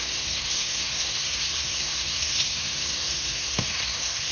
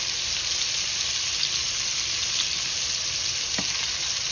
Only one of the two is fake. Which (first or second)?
first